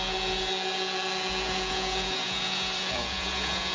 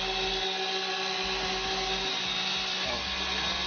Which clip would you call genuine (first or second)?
second